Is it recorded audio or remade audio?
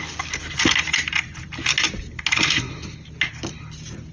recorded